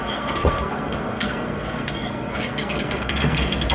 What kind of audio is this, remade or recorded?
remade